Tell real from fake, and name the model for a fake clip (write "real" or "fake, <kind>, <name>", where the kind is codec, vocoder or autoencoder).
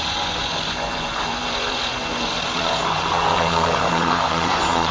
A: fake, vocoder, Vocos